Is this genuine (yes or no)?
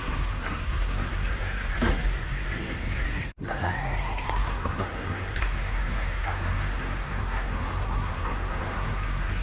no